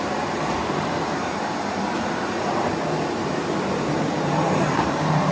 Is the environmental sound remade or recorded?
remade